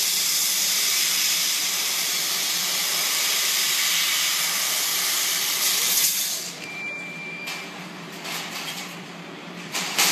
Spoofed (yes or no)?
yes